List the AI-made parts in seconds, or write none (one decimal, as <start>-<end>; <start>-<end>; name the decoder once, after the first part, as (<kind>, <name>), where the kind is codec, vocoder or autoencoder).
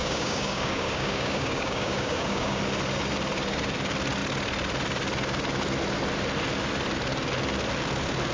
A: 0.0-2.6 (codec, DAC)